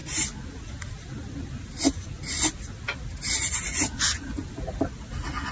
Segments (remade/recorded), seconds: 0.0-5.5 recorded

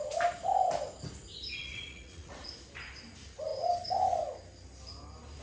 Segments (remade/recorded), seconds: 0.0-1.6 recorded; 1.6-2.5 remade; 2.5-5.4 recorded

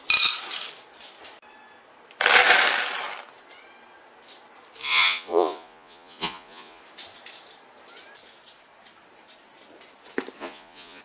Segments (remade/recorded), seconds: 0.0-4.8 recorded; 4.8-6.8 remade; 6.8-10.4 recorded; 10.4-11.0 remade

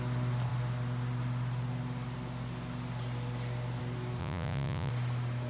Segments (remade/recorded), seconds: 0.0-4.2 recorded; 4.2-4.9 remade; 4.9-5.5 recorded

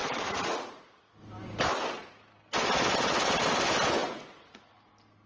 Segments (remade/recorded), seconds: 0.0-1.2 remade; 1.2-4.0 recorded; 4.0-4.7 remade; 4.7-5.3 recorded

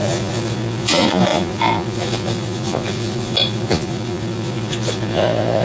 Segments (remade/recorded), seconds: 0.0-5.6 remade